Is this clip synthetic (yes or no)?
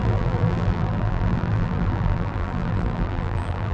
yes